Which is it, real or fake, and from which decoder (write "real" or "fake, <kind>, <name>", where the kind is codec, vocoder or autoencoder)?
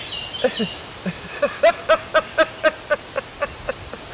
real